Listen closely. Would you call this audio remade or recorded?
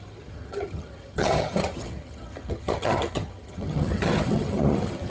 remade